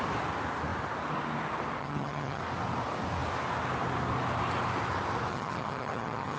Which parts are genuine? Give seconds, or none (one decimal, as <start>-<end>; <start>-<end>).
0.0-1.8; 2.4-5.3